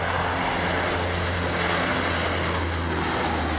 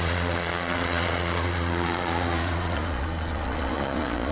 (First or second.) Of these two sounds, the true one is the first